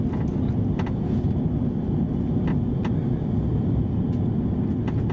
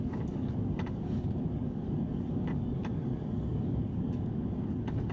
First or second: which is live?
first